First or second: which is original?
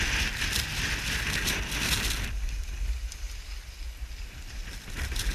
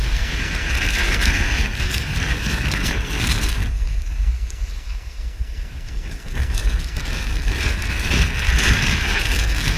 first